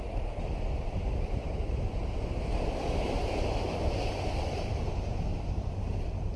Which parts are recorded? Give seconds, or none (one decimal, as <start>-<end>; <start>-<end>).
0.0-1.0; 4.8-5.3; 5.8-6.4